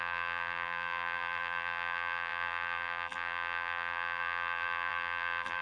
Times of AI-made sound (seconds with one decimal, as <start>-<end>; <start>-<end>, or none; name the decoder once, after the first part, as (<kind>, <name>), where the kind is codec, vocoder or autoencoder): 0.0-5.6 (vocoder, BigVGAN v2)

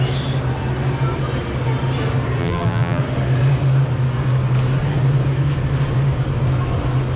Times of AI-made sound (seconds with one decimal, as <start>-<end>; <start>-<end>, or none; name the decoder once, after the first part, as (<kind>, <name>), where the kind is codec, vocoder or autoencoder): 2.4-3.0 (vocoder, BigVGAN v2)

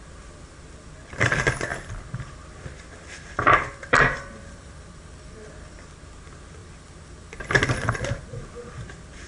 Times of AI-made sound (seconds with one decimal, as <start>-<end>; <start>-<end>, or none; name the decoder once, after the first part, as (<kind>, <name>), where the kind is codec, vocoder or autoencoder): 3.8-5.5 (vocoder, BigVGAN v2); 6.6-8.3